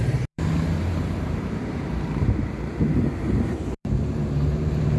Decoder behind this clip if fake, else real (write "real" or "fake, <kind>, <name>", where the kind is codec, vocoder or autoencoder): fake, vocoder, BigVGAN v2